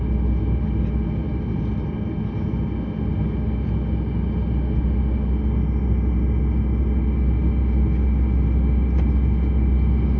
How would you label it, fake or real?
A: real